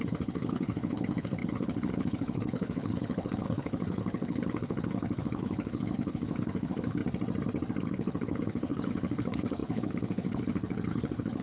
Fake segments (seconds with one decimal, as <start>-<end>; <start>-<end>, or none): 0.0-7.0; 7.8-11.4